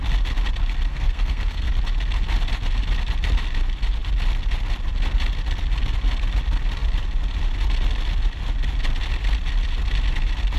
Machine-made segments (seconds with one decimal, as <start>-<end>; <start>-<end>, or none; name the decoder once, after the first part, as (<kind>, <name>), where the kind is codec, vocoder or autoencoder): 0.9-1.7 (codec, SNAC)